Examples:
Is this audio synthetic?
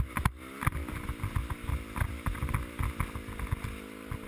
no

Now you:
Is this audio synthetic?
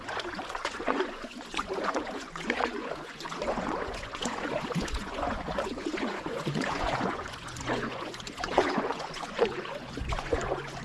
yes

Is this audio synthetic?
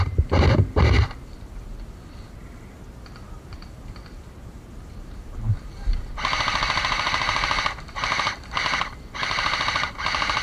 yes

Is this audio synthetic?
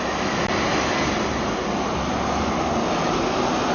no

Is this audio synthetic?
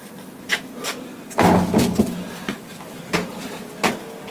no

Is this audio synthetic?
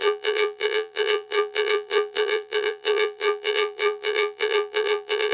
yes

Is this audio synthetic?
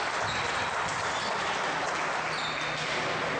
no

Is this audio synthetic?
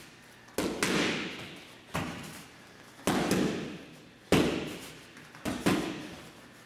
no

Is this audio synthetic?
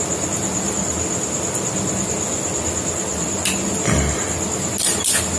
no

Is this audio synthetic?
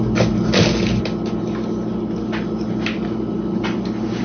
no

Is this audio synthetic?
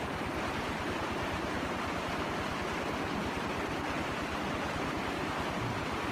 no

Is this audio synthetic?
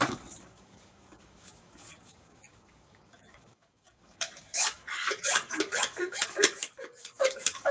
yes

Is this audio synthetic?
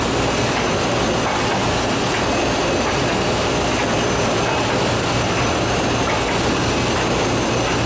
no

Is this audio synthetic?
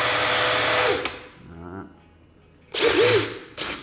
no